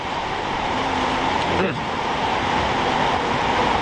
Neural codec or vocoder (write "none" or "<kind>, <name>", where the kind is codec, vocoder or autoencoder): vocoder, BigVGAN v2